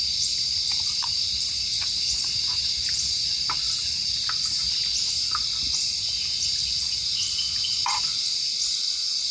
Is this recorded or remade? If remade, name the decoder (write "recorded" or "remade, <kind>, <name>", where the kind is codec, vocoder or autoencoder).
recorded